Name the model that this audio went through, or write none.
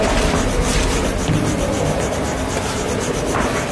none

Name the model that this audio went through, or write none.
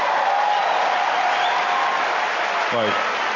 none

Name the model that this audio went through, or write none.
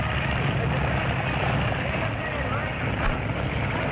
none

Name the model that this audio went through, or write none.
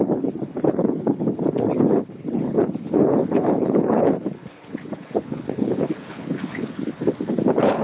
codec, HILCodec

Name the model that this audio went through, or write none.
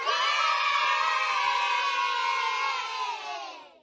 none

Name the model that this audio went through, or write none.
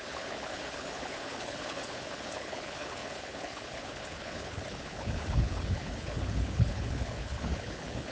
codec, HILCodec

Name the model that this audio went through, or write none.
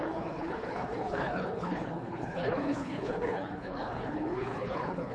codec, HILCodec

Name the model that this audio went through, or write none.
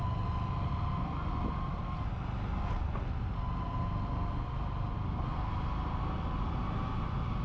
none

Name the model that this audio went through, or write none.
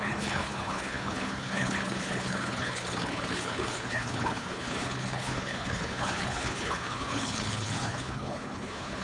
codec, HILCodec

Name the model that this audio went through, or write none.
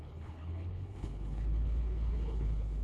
codec, HILCodec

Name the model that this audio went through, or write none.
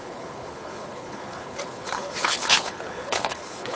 codec, HILCodec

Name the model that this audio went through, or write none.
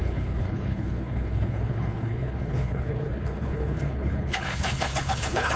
codec, HILCodec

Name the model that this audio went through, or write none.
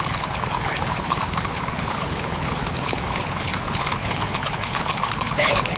codec, HILCodec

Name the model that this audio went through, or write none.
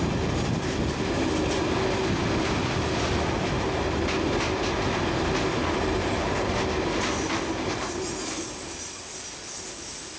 none